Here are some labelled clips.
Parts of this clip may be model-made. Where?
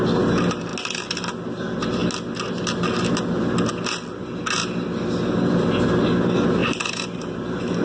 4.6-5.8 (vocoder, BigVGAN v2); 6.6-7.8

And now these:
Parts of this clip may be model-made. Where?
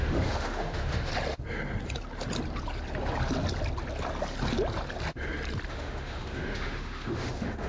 0.0-1.1 (autoencoder, DAC-VAE); 5.7-7.7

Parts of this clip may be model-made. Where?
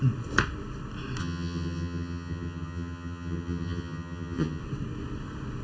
1.2-4.6 (vocoder, HiFi-GAN)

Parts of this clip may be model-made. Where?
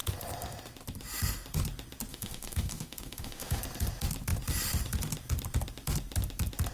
2.1-3.6 (autoencoder, DAC-VAE)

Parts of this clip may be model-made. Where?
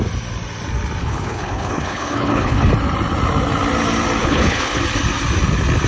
1.0-2.7 (codec, HILCodec); 4.2-4.8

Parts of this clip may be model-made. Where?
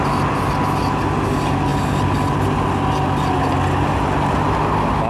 none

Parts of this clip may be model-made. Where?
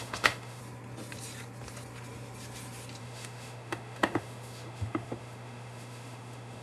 0.0-0.6 (autoencoder, DAC-VAE); 3.0-6.6